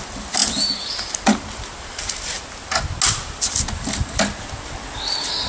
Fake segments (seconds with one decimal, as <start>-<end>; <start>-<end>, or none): none